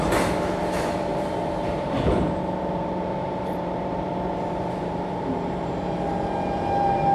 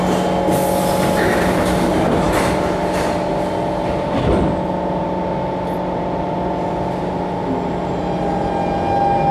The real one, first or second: second